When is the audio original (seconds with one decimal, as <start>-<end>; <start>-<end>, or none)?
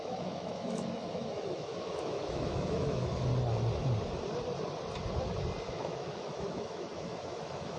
3.3-5.6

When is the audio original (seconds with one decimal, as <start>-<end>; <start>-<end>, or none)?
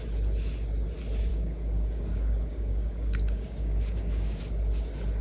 0.0-1.3; 4.4-5.2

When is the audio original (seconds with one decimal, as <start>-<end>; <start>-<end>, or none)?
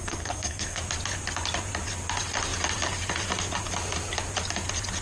0.8-5.0